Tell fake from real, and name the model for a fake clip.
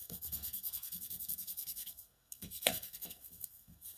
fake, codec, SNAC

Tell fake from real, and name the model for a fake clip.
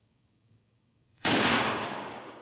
fake, codec, DAC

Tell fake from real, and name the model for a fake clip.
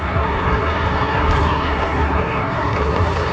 fake, codec, SNAC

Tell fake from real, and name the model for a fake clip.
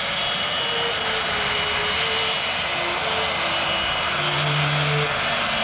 real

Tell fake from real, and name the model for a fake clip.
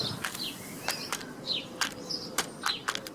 real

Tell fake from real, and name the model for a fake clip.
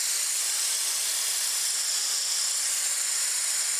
real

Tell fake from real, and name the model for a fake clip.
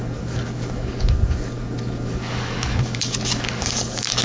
fake, codec, DAC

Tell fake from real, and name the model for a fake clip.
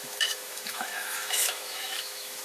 fake, autoencoder, DAC-VAE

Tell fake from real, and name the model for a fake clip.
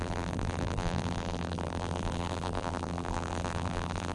fake, vocoder, BigVGAN v2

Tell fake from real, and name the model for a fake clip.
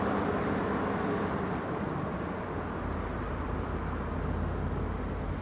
fake, vocoder, BigVGAN v2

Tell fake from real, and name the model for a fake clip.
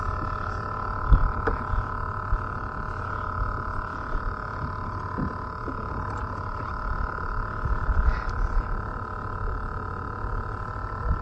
real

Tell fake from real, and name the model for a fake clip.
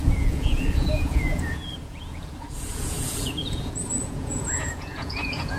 fake, vocoder, Vocos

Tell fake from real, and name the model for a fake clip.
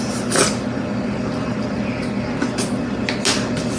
real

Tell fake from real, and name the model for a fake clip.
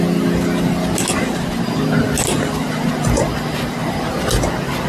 real